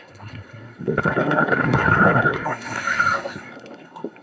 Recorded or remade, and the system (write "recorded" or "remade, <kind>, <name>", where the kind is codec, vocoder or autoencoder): remade, codec, SNAC